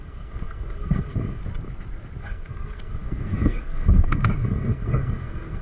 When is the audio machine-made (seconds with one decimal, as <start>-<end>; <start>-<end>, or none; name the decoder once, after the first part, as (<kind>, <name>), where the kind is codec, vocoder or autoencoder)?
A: 0.0-1.4 (codec, SNAC); 2.2-5.6